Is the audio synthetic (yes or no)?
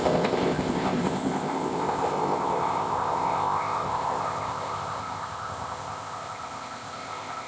yes